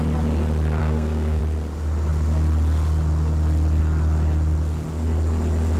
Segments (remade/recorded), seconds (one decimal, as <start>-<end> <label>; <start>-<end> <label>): 0.0-0.8 recorded; 0.8-1.4 remade; 1.4-5.8 recorded